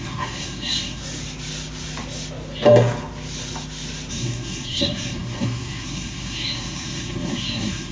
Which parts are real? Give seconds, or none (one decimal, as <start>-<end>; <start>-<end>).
1.0-4.1